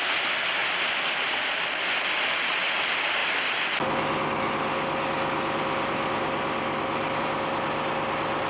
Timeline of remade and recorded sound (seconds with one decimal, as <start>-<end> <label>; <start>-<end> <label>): 0.0-8.5 recorded